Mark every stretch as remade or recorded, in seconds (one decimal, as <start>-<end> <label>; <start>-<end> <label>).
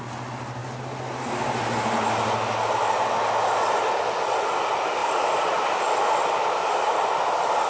0.0-7.7 recorded